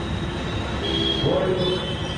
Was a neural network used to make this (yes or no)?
no